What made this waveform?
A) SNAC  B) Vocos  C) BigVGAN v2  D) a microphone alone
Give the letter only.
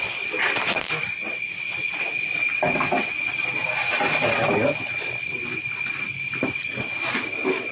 D